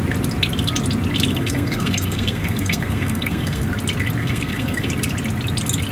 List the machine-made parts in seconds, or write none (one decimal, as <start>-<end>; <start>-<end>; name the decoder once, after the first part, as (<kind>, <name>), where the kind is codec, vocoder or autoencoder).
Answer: 1.3-3.7 (codec, SNAC); 4.2-4.9